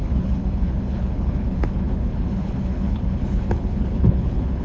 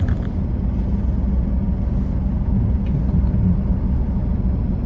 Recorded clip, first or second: second